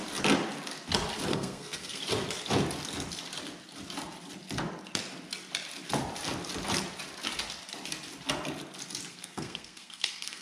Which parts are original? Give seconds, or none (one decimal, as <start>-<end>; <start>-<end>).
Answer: 0.0-1.3; 2.0-9.1